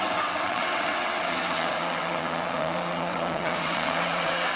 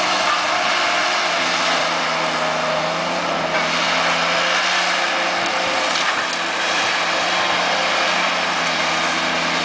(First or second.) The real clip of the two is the second